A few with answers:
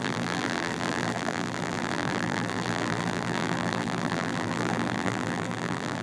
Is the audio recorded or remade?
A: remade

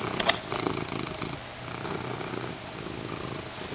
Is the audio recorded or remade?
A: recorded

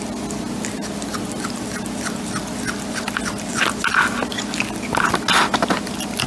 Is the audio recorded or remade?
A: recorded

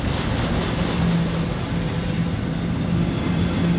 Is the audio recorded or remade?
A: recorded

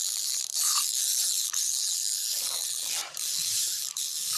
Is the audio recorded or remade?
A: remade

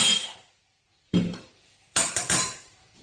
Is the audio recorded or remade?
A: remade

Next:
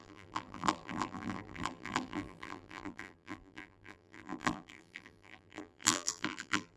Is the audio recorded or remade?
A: remade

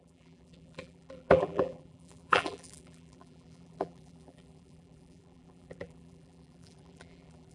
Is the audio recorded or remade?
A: remade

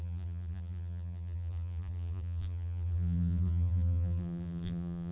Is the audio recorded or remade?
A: remade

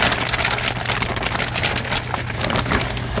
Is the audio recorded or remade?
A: recorded